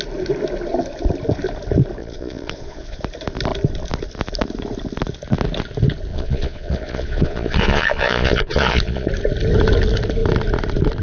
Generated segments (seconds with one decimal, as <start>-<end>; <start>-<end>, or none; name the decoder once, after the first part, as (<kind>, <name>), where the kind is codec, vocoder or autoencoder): 2.0-3.0 (vocoder, Vocos); 6.1-9.1